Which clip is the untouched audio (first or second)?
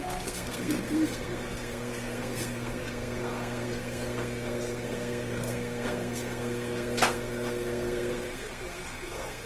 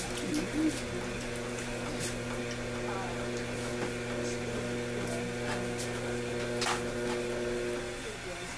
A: second